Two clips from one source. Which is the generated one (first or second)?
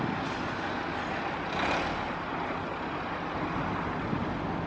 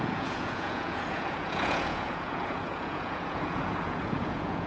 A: second